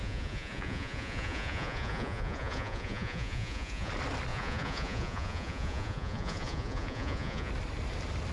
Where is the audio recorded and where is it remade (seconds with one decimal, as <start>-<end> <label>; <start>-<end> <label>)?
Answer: 0.0-3.9 remade; 3.9-4.3 recorded; 4.3-7.5 remade; 7.5-8.3 recorded